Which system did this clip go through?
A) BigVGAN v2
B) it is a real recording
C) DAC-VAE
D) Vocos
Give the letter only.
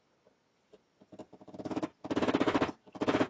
B